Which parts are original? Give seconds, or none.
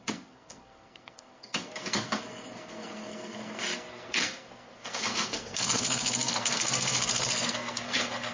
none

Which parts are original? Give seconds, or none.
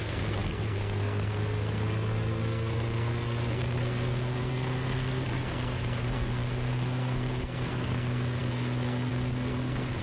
none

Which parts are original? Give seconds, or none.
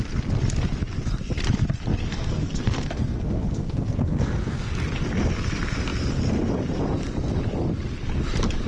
0.0-2.1; 4.7-8.7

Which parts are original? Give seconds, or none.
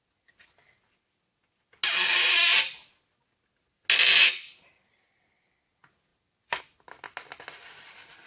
0.0-8.3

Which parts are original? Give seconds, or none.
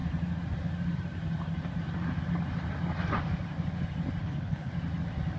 0.0-4.2; 4.7-5.4